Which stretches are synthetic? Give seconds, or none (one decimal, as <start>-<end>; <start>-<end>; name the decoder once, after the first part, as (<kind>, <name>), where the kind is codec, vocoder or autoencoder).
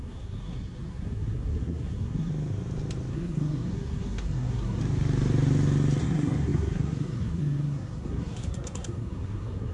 0.0-2.3 (codec, SNAC); 3.1-4.8; 6.0-9.7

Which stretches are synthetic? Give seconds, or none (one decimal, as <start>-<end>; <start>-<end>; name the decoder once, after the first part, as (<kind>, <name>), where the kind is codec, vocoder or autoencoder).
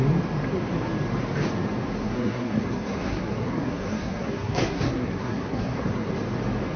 2.0-6.1 (codec, SNAC)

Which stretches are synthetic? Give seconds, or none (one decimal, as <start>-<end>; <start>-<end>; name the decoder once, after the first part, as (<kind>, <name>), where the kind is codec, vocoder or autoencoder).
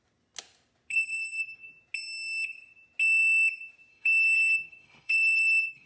0.9-1.7 (codec, SNAC); 3.9-5.9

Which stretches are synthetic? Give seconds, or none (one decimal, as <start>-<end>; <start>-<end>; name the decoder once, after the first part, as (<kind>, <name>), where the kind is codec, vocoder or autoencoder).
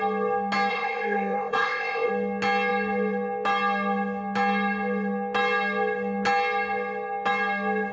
0.7-2.1 (codec, ZipCodec)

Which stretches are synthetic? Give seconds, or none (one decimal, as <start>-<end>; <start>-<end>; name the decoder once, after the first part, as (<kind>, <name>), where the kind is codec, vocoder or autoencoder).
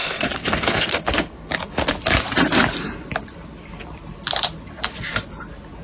0.0-1.5 (codec, SNAC)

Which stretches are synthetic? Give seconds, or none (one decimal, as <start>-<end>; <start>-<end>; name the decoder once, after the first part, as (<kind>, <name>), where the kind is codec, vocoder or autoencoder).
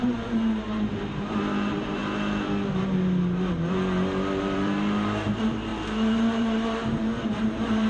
0.0-2.0 (vocoder, BigVGAN v2); 4.4-7.9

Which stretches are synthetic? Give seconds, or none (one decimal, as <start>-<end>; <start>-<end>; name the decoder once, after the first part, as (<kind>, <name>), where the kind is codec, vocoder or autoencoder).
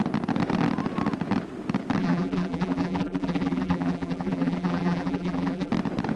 2.0-5.7 (vocoder, BigVGAN v2)